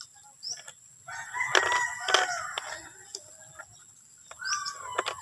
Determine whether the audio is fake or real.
real